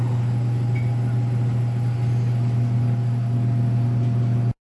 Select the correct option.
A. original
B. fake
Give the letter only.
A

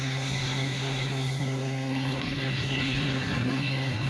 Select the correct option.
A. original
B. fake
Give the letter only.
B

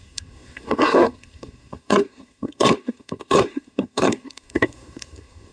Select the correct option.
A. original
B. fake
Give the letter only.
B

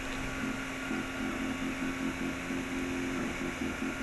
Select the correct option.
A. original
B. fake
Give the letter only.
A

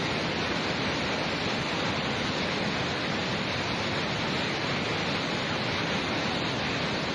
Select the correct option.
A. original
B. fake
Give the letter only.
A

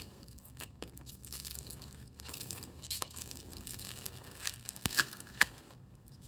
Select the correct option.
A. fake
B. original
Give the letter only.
A